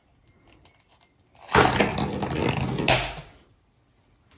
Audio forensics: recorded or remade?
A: recorded